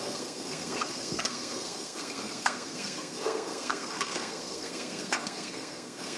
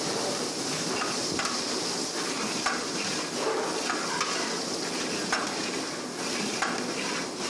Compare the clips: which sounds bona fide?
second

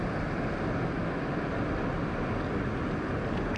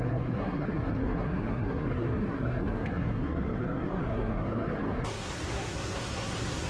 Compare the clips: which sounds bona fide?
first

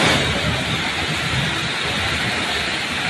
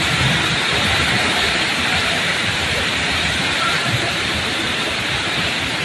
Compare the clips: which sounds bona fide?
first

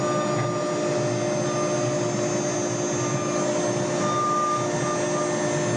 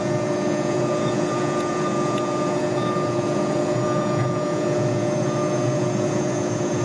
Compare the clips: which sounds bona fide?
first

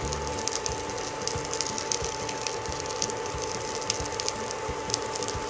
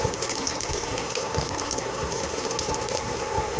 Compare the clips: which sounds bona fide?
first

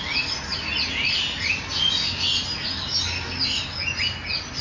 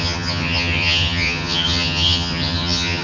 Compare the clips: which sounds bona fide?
first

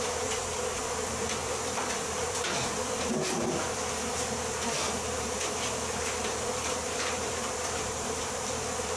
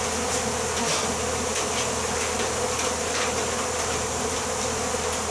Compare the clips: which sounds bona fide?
second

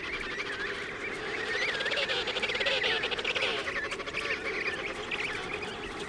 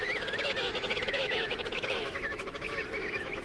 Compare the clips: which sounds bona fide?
first